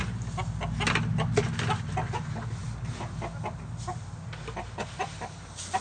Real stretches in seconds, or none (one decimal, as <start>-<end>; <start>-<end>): 0.0-5.8